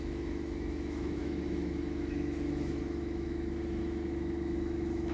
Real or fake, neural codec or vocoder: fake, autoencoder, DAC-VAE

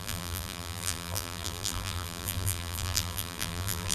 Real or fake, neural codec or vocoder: fake, vocoder, BigVGAN v2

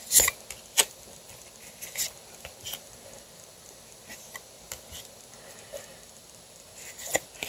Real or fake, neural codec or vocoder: real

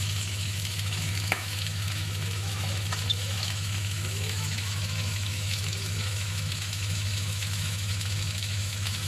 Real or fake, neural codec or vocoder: fake, autoencoder, DAC-VAE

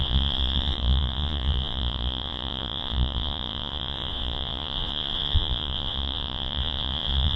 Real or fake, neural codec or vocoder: fake, vocoder, Vocos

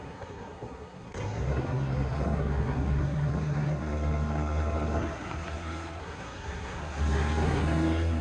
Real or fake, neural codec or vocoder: fake, codec, SNAC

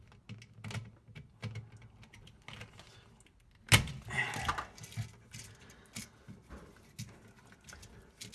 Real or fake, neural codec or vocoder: real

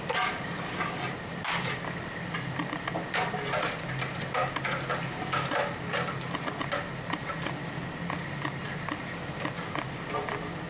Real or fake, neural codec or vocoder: real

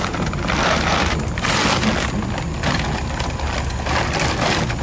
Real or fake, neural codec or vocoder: real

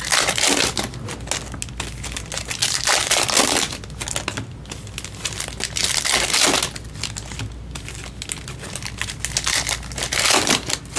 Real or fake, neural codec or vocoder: real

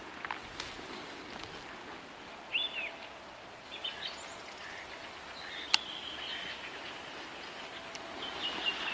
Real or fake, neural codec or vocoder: real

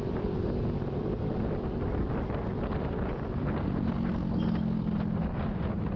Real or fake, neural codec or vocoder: real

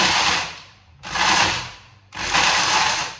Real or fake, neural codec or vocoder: fake, vocoder, BigVGAN v2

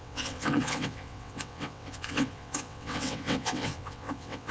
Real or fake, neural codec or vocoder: fake, vocoder, WaveNeXt